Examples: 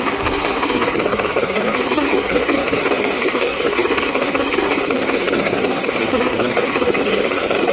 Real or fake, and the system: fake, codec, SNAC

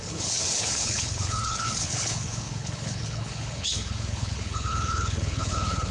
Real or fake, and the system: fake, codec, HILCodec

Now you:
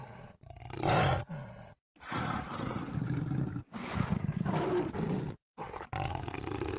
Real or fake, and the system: fake, vocoder, BigVGAN v2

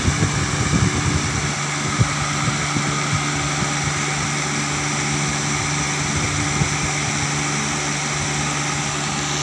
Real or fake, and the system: real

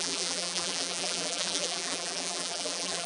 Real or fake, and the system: fake, vocoder, BigVGAN v2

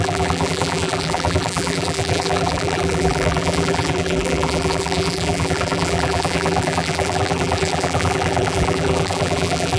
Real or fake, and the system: fake, vocoder, BigVGAN v2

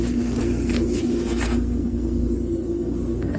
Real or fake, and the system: fake, codec, SNAC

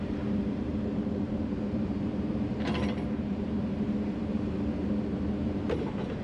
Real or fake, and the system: fake, vocoder, BigVGAN v2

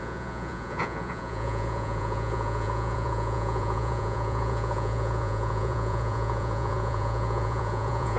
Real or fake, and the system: fake, vocoder, Vocos